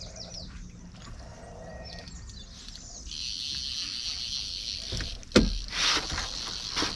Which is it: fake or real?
real